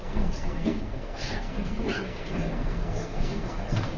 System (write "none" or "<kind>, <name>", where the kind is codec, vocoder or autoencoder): codec, SNAC